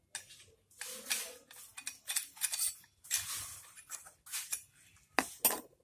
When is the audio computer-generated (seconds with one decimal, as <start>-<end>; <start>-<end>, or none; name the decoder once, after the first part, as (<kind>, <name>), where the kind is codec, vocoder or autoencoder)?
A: none

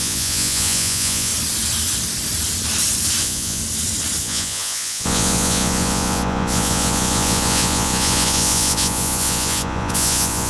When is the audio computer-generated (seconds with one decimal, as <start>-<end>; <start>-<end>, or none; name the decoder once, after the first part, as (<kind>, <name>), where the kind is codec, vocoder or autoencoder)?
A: 0.0-1.3 (vocoder, Vocos); 3.2-3.6; 4.2-10.5

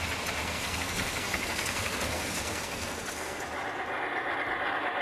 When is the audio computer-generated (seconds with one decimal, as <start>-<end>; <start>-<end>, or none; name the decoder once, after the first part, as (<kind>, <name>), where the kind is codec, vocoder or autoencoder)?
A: 0.4-3.4 (codec, SNAC)

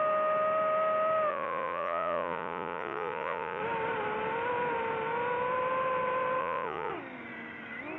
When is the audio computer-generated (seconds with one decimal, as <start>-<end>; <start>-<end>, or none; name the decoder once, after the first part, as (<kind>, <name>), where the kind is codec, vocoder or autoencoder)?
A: 1.3-3.6 (vocoder, Vocos); 6.4-6.9

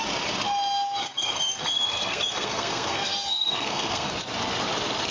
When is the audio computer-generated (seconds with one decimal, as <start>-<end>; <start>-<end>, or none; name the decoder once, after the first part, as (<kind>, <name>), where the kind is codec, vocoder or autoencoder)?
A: 1.0-4.1 (codec, SNAC)

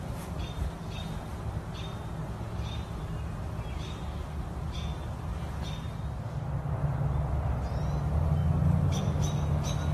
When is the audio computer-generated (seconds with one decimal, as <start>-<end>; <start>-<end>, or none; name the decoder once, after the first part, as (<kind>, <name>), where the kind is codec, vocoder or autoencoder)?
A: none

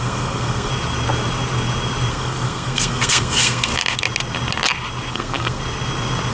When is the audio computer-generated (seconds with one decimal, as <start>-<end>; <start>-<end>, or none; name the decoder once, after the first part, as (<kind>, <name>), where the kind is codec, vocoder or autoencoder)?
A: 0.0-0.7 (codec, SNAC); 2.1-3.7; 5.1-5.6